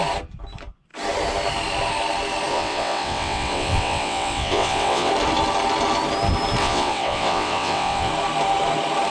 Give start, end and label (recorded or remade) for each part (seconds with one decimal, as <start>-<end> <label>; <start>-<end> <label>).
0.0-2.5 recorded; 2.5-5.1 remade; 5.1-6.6 recorded; 6.6-8.1 remade; 8.1-9.1 recorded

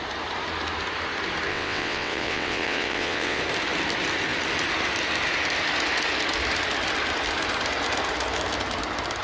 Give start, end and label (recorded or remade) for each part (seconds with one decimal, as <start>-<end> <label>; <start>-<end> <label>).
0.0-1.5 recorded; 1.5-3.4 remade; 3.4-9.2 recorded

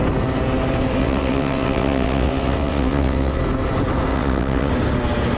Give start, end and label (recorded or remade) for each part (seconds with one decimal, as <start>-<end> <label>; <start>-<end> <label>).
0.0-1.0 recorded; 1.0-3.4 remade; 3.4-4.1 recorded; 4.1-4.7 remade; 4.7-5.4 recorded

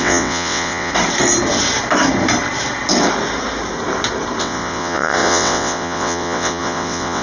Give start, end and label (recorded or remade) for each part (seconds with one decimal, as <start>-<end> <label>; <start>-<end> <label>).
0.0-0.9 remade; 0.9-4.4 recorded; 4.4-7.2 remade